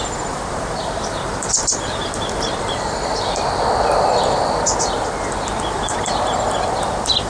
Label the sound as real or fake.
fake